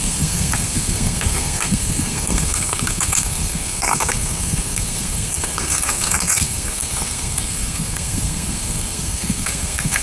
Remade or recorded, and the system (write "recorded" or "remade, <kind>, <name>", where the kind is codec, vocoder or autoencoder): remade, codec, SNAC